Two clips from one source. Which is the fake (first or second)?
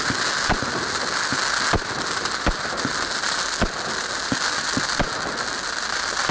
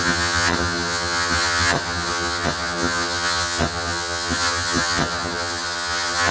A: second